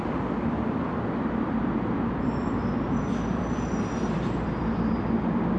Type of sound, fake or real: fake